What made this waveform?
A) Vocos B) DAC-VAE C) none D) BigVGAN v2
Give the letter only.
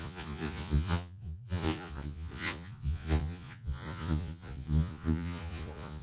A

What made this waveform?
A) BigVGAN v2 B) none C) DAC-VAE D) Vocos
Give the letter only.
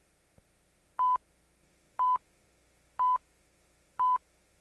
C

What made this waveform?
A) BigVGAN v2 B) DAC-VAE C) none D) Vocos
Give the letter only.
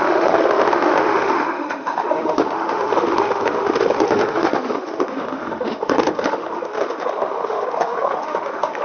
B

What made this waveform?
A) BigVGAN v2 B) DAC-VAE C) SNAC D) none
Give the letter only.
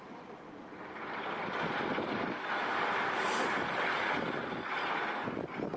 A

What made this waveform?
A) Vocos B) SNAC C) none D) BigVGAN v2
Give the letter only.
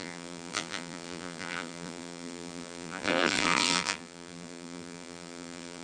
D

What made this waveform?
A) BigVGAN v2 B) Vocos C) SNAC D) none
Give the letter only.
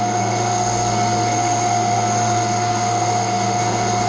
C